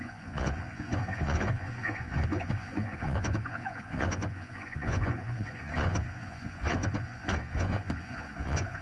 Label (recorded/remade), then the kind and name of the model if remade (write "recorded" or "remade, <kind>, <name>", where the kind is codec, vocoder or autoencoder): remade, vocoder, Vocos